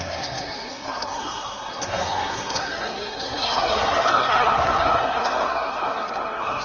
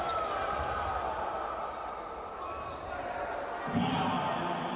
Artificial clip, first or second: first